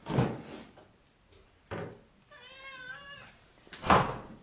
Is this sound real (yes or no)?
yes